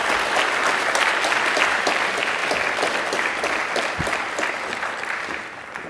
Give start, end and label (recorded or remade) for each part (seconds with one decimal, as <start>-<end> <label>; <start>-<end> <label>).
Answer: 0.0-5.9 recorded